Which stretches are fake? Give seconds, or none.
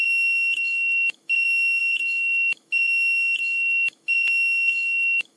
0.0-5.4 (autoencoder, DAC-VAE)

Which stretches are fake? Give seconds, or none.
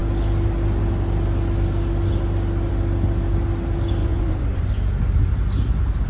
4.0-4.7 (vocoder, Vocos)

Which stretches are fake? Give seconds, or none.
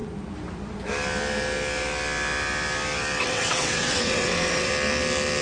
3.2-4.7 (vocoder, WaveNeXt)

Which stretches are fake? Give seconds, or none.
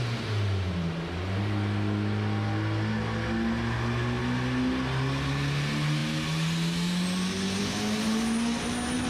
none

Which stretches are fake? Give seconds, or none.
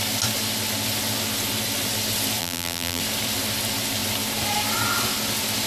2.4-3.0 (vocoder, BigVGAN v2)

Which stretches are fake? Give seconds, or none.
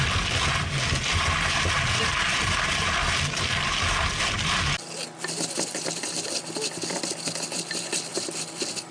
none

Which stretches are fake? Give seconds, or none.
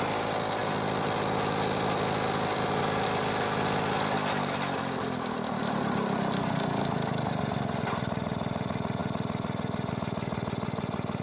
none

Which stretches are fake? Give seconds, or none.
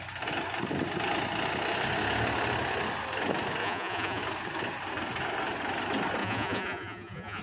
3.6-4.2 (vocoder, Vocos); 6.2-7.4